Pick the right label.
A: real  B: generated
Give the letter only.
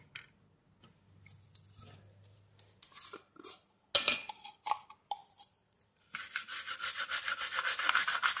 A